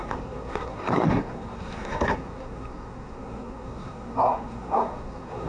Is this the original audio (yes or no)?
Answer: no